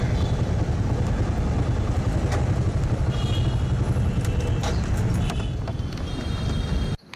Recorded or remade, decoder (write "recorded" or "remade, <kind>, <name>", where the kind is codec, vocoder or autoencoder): recorded